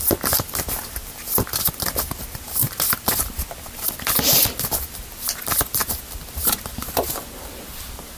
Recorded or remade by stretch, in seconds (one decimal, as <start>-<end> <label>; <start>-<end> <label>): 0.0-8.2 recorded